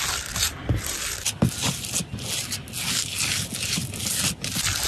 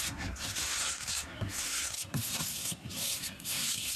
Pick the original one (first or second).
first